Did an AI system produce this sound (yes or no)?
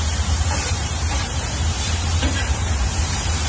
yes